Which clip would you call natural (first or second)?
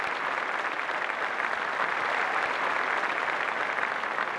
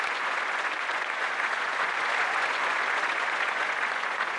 first